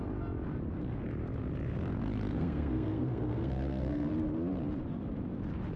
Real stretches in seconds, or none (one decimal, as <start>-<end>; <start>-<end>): 0.0-2.3; 4.1-5.8